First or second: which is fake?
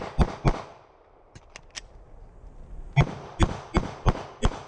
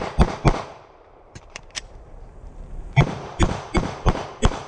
second